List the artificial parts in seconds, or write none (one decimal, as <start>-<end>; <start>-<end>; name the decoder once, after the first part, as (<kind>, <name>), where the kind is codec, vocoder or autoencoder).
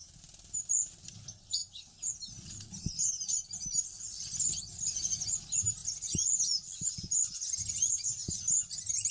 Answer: none